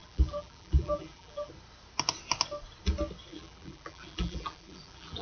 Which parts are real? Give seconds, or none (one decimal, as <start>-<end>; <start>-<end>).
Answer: 1.5-3.3